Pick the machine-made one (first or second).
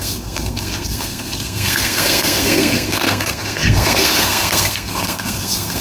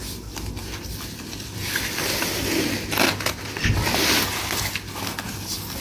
first